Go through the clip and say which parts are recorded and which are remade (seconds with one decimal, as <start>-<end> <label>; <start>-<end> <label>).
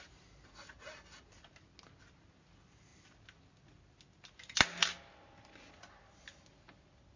0.0-7.2 recorded